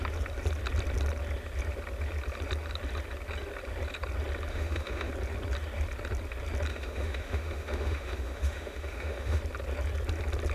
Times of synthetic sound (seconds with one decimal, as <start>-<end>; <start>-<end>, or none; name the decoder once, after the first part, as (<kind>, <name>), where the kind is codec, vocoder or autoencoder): 4.5-5.1 (autoencoder, DAC-VAE); 6.7-9.4